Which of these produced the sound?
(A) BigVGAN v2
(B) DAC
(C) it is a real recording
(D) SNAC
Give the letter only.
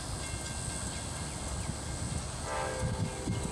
C